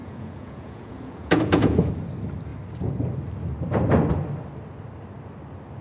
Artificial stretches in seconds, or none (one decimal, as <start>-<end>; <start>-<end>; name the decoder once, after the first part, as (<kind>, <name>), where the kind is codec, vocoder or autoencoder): 0.0-1.9 (vocoder, Vocos)